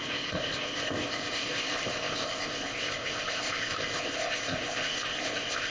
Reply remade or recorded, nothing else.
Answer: remade